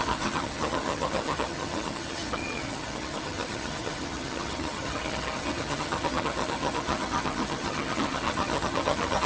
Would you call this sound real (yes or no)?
no